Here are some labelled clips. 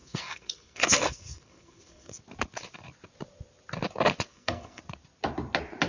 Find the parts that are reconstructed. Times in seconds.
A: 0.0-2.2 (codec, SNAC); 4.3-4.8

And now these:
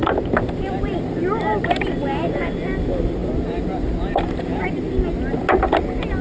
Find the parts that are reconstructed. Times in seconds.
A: none

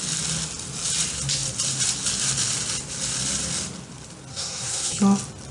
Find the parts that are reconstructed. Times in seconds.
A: 4.3-5.0 (codec, SNAC)

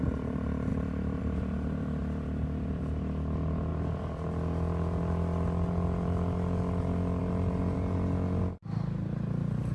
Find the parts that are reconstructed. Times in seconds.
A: 0.7-1.2 (vocoder, BigVGAN v2); 2.0-2.8

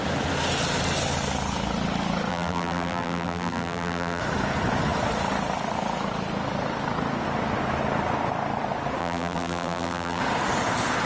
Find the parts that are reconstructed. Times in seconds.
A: 2.3-4.2 (vocoder, BigVGAN v2); 9.0-10.2